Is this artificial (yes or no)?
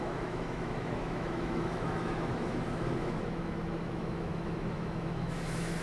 yes